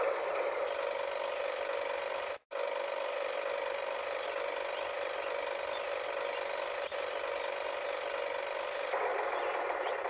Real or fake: real